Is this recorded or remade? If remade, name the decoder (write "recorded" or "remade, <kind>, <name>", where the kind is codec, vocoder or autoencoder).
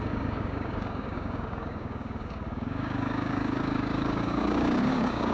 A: remade, codec, DAC